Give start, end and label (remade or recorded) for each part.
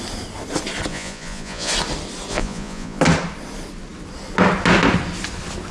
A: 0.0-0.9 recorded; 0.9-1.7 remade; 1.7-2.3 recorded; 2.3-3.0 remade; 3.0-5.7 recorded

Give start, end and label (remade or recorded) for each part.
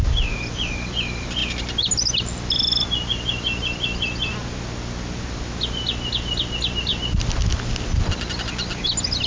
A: 0.0-9.3 recorded